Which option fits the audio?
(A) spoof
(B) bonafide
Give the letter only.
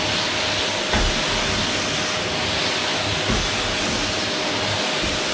B